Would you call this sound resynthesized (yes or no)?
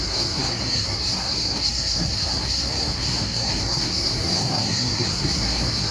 yes